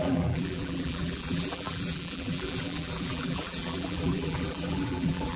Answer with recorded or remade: remade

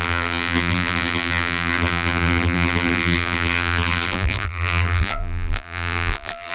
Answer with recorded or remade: remade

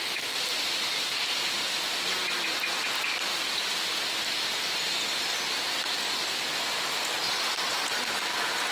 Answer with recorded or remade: recorded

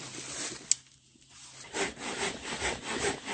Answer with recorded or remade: recorded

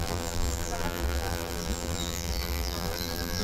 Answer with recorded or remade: remade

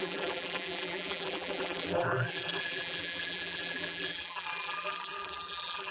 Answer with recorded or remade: remade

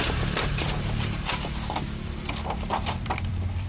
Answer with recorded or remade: remade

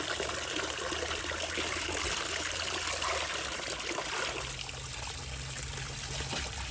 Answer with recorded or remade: recorded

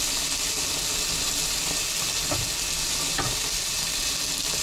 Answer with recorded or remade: recorded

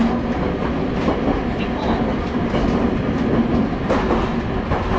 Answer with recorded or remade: remade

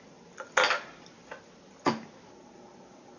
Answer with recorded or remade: recorded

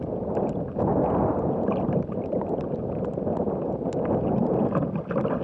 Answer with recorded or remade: recorded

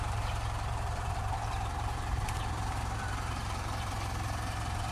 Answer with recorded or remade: remade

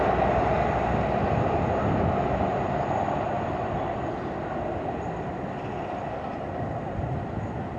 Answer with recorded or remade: recorded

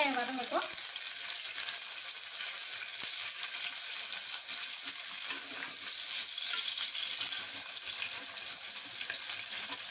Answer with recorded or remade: recorded